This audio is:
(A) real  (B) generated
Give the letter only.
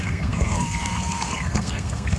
B